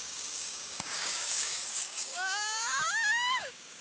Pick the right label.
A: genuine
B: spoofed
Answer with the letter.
B